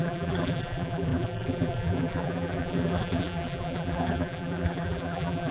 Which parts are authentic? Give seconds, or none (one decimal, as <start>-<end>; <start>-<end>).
none